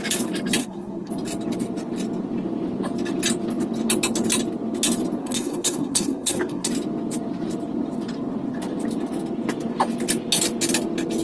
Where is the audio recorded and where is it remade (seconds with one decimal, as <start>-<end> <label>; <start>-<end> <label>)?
0.0-0.6 recorded; 0.6-1.1 remade; 1.1-5.2 recorded; 5.2-6.7 remade; 6.7-11.2 recorded